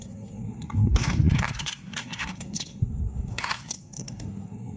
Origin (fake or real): fake